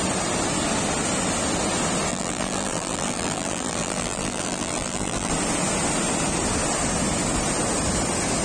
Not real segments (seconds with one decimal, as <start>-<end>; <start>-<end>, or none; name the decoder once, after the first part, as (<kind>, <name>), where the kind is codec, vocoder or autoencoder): 2.1-5.3 (vocoder, BigVGAN v2)